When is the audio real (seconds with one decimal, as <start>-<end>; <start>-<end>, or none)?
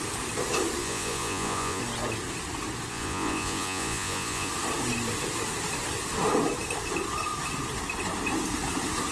0.0-0.8; 1.8-2.9; 4.5-9.1